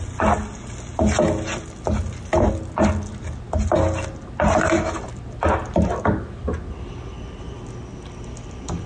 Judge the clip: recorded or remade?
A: recorded